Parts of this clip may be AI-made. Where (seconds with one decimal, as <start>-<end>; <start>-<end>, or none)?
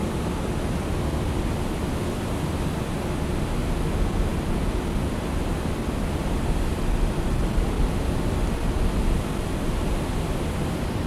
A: none